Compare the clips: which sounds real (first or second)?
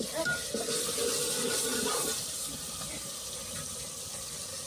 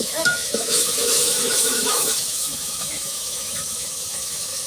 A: first